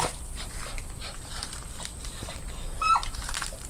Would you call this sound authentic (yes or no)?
no